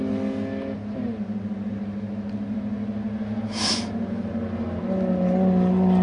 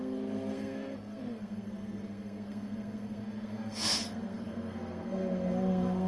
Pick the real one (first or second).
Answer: first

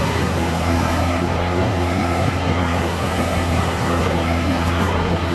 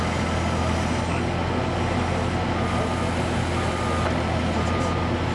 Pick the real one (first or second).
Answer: second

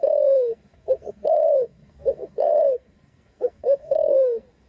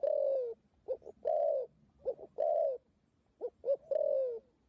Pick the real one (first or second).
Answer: second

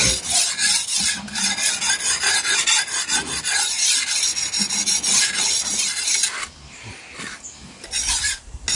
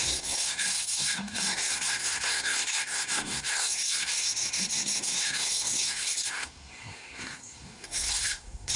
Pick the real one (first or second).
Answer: first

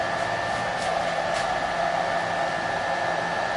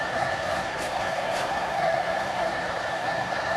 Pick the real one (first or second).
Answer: first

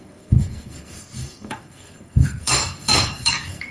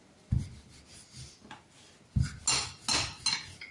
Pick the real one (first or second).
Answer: second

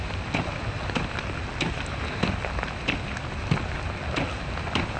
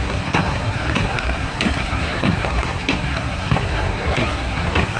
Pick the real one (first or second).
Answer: first